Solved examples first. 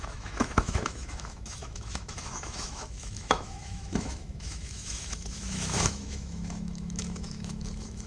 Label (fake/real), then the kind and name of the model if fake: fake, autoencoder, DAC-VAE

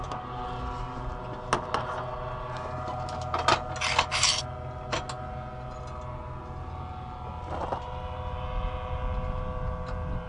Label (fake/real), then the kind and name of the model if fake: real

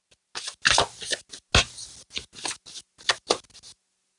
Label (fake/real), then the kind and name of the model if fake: real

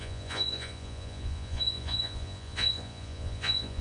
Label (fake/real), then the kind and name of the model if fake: fake, vocoder, Vocos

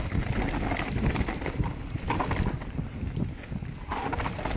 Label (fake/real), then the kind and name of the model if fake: real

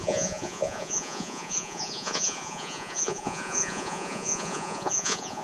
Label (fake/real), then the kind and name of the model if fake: fake, vocoder, Vocos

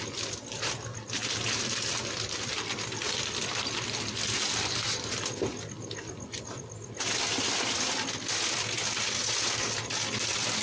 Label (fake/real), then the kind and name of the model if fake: real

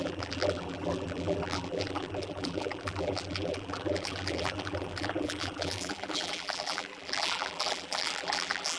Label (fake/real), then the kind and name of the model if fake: fake, vocoder, BigVGAN v2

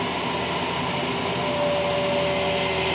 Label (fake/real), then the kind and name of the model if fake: real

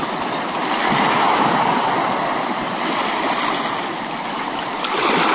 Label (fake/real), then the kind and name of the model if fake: real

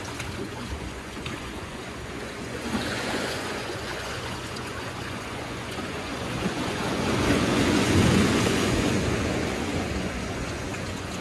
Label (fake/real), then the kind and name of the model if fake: fake, vocoder, Vocos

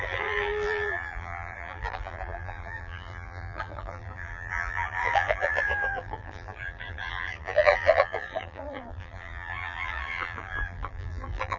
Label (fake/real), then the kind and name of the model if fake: fake, vocoder, BigVGAN v2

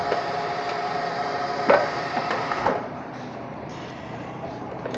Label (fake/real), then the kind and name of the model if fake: fake, vocoder, BigVGAN v2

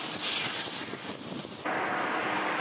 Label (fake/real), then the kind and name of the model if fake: real